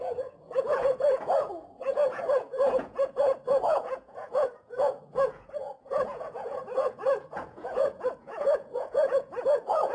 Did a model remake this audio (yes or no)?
yes